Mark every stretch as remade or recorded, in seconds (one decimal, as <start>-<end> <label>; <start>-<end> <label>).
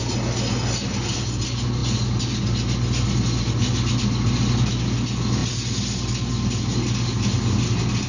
0.0-8.1 recorded